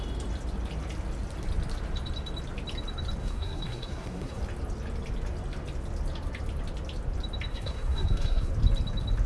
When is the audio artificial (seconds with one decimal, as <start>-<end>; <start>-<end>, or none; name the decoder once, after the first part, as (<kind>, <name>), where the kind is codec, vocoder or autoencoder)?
3.2-4.4 (codec, SNAC); 7.5-8.5